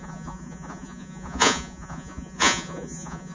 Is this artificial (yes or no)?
yes